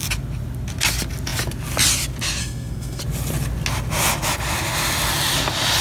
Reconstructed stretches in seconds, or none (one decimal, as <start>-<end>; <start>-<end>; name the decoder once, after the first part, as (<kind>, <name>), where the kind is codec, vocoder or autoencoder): 2.4-3.0 (codec, SNAC)